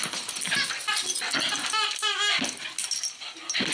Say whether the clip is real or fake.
real